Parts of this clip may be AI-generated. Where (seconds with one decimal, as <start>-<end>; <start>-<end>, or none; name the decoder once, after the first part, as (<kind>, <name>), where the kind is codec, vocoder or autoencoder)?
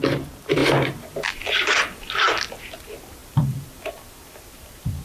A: 0.0-5.0 (vocoder, BigVGAN v2)